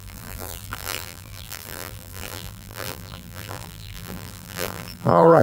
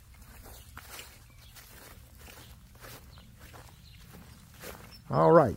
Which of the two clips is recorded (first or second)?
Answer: second